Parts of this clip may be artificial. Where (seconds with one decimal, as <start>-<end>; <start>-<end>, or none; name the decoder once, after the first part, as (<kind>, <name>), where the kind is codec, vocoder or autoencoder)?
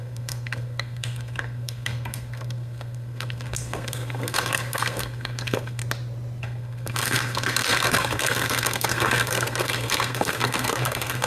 0.0-5.8 (codec, SNAC); 6.4-11.3